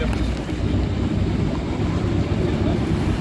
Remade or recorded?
recorded